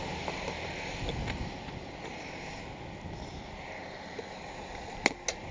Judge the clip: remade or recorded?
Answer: recorded